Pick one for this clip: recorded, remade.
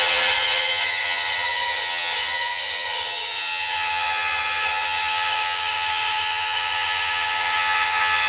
remade